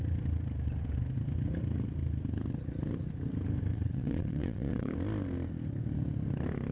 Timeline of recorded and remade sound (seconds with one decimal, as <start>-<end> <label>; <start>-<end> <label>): 0.0-3.7 recorded; 3.7-4.9 remade; 4.9-6.7 recorded